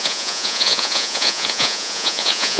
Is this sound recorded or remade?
remade